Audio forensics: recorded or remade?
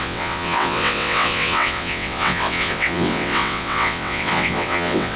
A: remade